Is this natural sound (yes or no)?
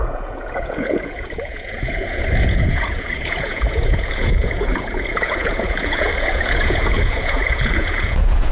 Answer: no